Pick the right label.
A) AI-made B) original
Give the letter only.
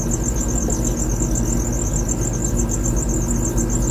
B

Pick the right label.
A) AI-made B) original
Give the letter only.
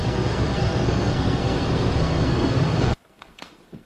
A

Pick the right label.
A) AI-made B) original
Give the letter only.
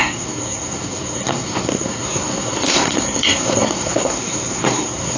A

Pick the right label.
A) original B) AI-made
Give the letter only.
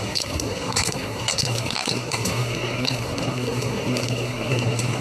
B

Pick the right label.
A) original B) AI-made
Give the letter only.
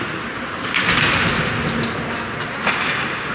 A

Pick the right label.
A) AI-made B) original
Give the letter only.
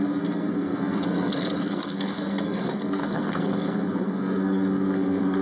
A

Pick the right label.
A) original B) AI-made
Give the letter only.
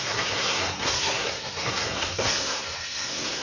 B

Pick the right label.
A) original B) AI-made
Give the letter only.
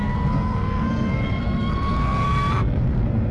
B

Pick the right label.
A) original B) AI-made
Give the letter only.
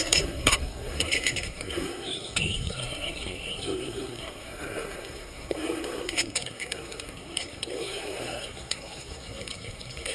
B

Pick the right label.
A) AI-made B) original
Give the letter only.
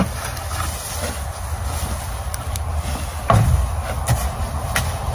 B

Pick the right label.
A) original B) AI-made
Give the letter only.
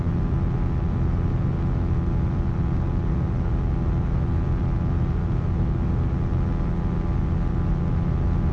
A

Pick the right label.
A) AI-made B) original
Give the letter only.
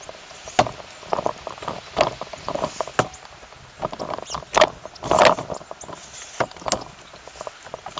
B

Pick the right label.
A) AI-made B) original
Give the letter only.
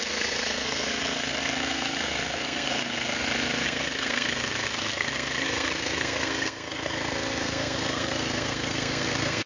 A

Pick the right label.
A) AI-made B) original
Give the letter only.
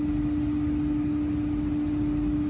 B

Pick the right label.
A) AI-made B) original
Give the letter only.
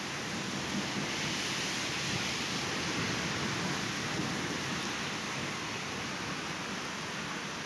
B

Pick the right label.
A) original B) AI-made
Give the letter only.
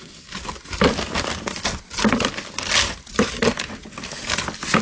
A